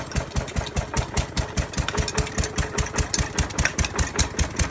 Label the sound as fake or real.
real